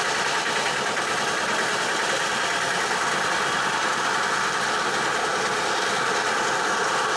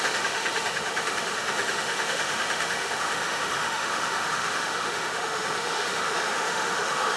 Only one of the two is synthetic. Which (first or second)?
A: second